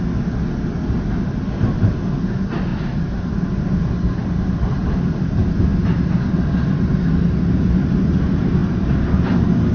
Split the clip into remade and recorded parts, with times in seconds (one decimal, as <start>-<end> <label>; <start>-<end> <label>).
0.0-2.7 recorded; 2.7-3.8 remade; 3.8-4.2 recorded; 4.2-4.9 remade; 4.9-9.7 recorded